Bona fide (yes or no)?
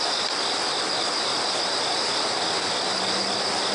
yes